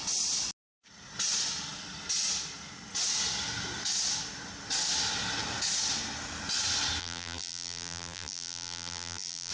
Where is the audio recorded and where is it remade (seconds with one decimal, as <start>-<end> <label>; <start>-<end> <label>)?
0.0-7.0 recorded; 7.0-9.5 remade